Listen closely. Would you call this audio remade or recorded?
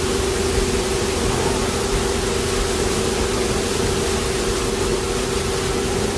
recorded